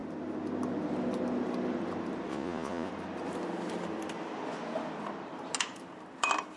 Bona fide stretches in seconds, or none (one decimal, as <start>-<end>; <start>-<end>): 0.0-2.3; 2.9-6.6